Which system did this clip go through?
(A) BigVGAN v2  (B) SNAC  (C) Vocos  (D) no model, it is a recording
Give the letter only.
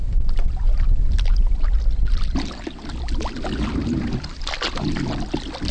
D